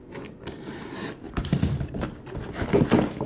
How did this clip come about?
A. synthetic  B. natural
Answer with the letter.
B